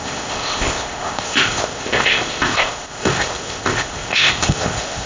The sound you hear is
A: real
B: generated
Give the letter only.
B